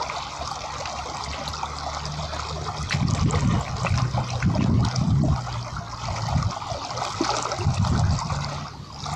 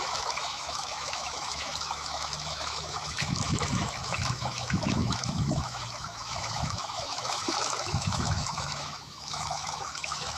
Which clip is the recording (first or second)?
first